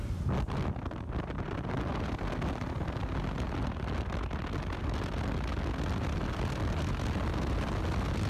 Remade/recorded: recorded